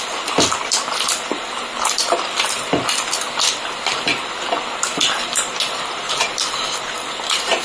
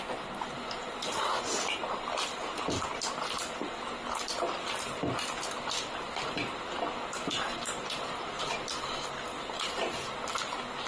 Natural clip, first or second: second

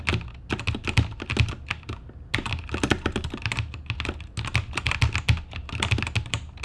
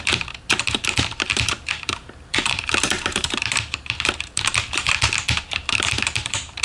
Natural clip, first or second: first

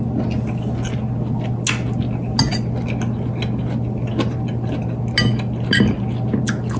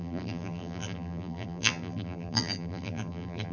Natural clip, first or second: first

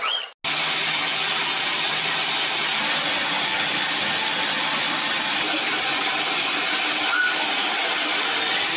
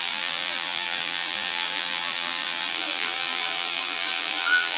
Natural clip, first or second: first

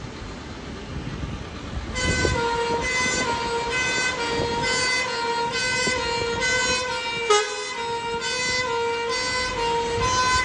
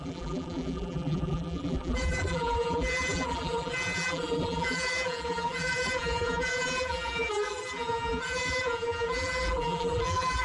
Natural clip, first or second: first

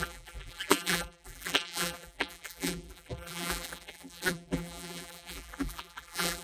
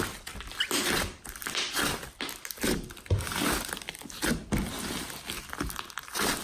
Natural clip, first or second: second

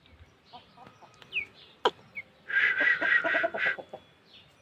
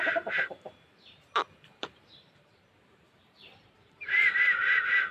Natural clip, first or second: first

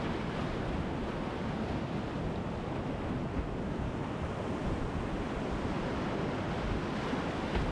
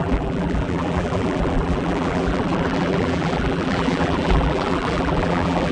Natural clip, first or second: first